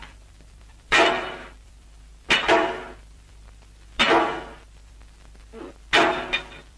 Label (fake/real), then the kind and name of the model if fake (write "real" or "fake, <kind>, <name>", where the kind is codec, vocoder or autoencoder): fake, vocoder, BigVGAN v2